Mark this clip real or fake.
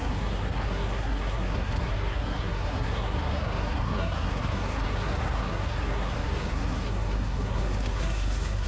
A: fake